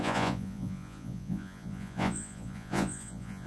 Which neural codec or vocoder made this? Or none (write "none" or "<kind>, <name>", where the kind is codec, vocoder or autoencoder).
vocoder, Vocos